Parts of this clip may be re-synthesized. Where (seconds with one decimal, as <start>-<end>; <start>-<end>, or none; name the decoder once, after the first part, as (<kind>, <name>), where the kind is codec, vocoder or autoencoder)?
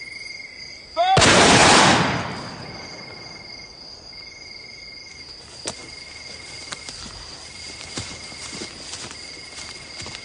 none